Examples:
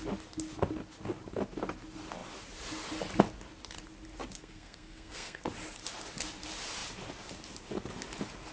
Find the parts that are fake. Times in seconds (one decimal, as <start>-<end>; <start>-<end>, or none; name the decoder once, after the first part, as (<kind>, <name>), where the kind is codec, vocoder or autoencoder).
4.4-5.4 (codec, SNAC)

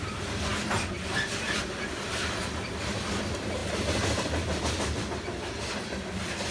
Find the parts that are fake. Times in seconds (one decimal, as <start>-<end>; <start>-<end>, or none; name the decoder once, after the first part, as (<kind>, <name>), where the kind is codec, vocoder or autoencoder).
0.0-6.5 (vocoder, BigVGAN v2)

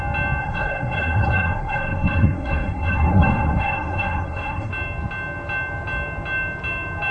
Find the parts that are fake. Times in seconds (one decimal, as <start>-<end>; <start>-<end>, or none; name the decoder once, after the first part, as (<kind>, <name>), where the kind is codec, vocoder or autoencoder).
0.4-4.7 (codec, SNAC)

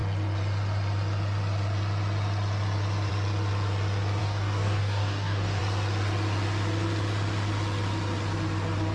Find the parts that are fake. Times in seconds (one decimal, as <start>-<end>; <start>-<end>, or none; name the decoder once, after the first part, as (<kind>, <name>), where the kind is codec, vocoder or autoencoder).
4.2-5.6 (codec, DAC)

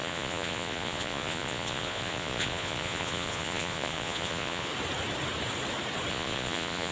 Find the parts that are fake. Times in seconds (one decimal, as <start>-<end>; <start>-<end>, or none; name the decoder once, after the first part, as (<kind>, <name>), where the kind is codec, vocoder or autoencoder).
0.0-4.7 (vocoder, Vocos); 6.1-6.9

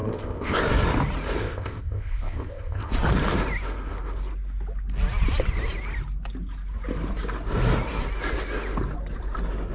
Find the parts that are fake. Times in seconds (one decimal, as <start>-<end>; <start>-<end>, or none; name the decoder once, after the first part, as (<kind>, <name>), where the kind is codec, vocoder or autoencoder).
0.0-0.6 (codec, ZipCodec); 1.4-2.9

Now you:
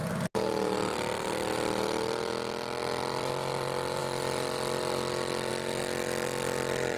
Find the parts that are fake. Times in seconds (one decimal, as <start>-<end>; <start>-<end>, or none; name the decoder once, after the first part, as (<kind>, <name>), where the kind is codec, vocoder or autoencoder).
3.0-7.0 (vocoder, BigVGAN v2)

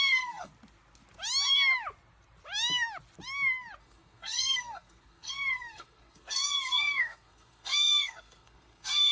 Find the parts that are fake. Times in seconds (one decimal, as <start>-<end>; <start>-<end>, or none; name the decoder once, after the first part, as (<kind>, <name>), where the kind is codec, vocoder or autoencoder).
0.0-0.5 (codec, SNAC); 3.8-9.1